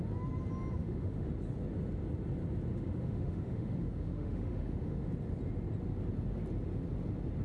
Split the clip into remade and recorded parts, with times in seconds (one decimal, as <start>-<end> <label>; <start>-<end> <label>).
0.0-0.8 recorded; 0.8-1.3 remade; 1.3-2.7 recorded; 2.7-5.1 remade; 5.1-7.4 recorded